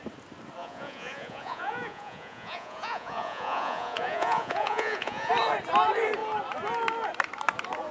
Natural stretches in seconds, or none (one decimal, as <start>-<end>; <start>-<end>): 0.0-0.6; 5.3-7.9